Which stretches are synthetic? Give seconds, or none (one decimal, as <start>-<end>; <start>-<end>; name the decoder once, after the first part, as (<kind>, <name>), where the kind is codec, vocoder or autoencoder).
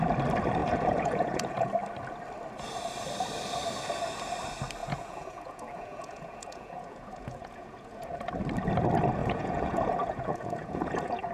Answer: 0.6-1.7 (vocoder, Vocos); 4.8-8.3; 9.2-11.3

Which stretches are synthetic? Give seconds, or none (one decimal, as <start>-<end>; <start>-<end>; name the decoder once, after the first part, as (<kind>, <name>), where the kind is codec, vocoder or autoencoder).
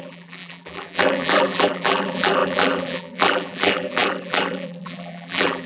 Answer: 0.0-5.7 (vocoder, BigVGAN v2)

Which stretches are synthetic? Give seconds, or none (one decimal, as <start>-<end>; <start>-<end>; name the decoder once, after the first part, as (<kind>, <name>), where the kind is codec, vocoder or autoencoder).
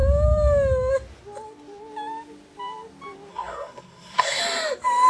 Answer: 3.3-4.4 (codec, SNAC)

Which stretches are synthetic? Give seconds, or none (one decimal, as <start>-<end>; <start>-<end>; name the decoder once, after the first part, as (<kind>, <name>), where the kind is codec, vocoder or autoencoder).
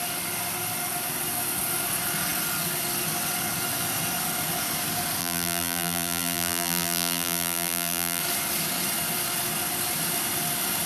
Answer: 5.2-8.2 (vocoder, BigVGAN v2)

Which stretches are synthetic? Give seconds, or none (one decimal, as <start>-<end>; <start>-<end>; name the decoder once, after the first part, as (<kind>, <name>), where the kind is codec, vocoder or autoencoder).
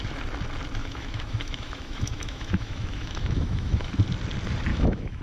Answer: 0.8-3.9 (autoencoder, DAC-VAE); 4.7-5.2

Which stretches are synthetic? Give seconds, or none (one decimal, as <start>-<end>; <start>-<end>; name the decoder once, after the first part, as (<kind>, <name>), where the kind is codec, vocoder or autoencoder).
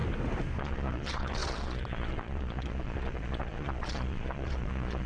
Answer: 0.6-5.1 (vocoder, Vocos)